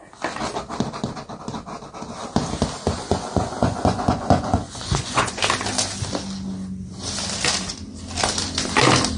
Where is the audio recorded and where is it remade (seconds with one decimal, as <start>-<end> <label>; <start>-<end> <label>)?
0.0-2.9 recorded; 2.9-5.4 remade; 5.4-9.2 recorded